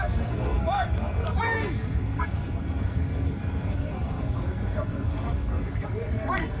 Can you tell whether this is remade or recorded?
remade